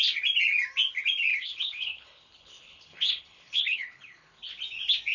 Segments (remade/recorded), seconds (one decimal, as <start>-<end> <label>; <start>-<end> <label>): 0.0-1.3 recorded; 1.3-4.4 remade; 4.4-5.1 recorded